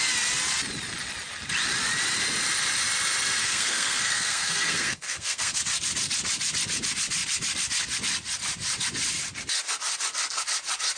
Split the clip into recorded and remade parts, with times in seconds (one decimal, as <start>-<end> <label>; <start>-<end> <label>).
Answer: 0.0-3.4 recorded; 3.4-5.6 remade; 5.6-11.0 recorded